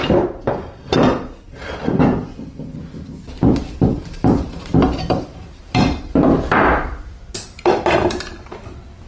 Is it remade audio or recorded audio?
remade